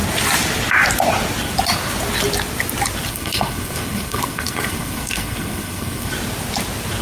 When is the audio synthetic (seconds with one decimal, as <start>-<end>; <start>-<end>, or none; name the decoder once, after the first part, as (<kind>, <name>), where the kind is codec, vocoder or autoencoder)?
3.1-6.1 (codec, SNAC)